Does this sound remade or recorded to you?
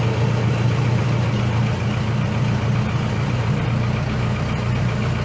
recorded